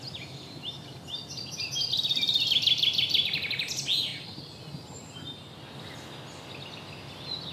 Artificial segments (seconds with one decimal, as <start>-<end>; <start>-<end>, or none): none